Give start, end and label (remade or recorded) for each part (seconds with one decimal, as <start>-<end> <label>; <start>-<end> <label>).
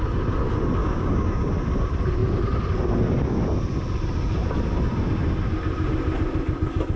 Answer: 0.0-0.8 recorded; 0.8-1.5 remade; 1.5-7.0 recorded